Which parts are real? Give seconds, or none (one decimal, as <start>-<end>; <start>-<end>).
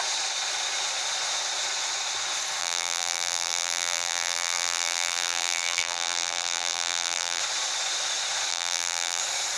0.0-2.6; 7.4-8.5; 9.2-9.6